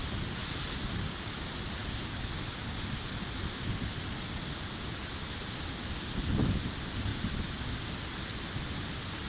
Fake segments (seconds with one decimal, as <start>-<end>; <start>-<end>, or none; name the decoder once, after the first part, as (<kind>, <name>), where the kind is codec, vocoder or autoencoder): 0.0-0.6 (vocoder, BigVGAN v2)